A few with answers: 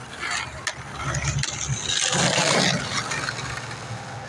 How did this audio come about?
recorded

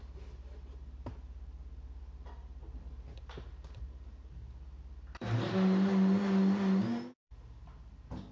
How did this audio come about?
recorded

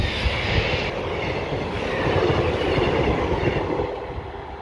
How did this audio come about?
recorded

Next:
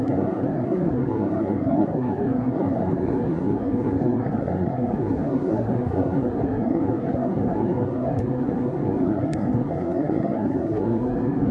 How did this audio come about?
remade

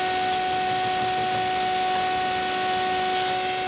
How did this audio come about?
recorded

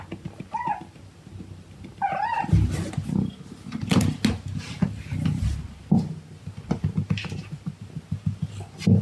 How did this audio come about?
recorded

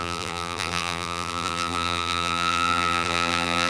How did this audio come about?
remade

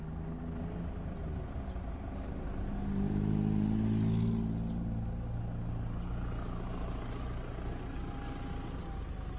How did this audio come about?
recorded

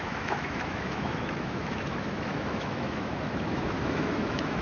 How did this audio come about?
remade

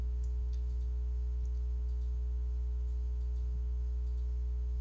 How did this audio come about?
recorded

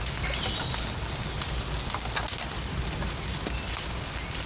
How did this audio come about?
recorded